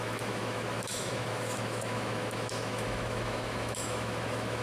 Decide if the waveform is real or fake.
fake